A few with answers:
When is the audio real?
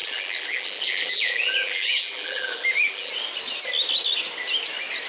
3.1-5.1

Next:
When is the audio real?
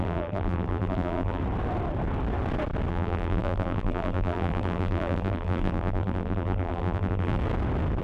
1.4-2.9; 7.4-8.0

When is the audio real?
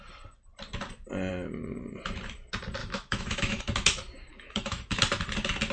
0.0-2.8; 3.6-4.3; 5.0-5.7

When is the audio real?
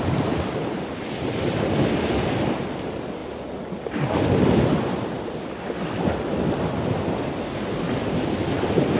0.0-9.0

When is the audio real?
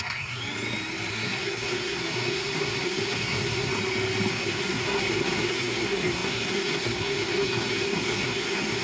0.4-1.1; 3.7-4.3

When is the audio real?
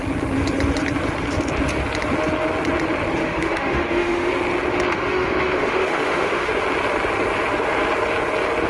0.0-3.2; 4.3-4.9; 6.5-8.7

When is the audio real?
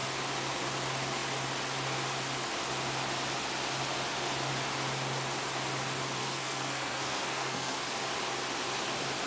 0.0-6.2; 7.8-9.3